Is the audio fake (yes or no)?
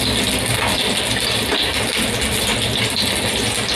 no